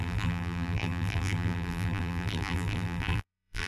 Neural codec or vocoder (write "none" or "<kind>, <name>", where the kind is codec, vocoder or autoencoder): vocoder, BigVGAN v2